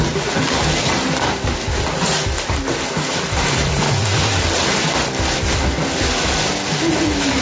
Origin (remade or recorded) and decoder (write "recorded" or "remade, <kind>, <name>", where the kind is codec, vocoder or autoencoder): recorded